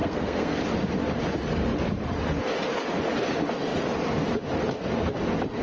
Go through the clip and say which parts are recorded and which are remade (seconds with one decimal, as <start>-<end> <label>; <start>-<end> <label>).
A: 0.0-0.6 remade; 0.6-5.6 recorded